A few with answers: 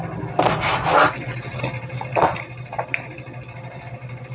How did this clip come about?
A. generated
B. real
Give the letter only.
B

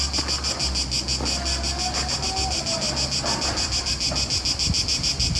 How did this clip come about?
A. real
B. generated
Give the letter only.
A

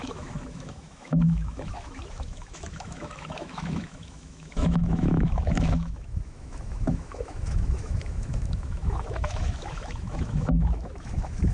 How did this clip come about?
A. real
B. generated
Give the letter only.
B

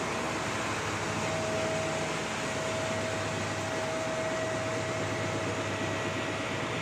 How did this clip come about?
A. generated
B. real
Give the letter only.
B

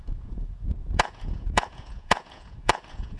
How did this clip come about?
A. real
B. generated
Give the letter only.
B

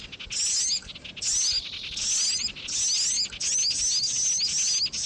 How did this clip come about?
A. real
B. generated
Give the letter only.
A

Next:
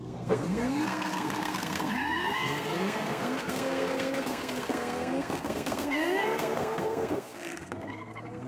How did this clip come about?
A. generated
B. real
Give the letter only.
A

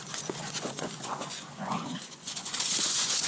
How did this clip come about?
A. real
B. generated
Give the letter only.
B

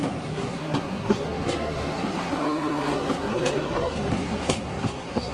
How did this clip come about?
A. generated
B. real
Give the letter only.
A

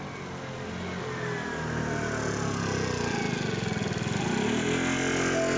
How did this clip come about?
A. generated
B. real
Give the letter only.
B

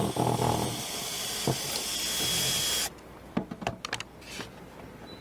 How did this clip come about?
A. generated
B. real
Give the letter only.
B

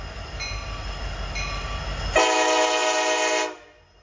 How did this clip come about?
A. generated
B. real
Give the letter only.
B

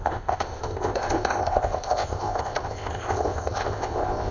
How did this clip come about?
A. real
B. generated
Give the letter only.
B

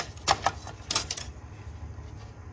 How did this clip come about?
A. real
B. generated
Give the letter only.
A